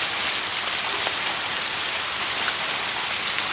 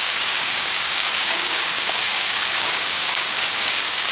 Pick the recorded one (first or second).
first